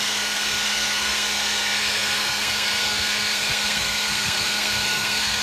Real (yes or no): no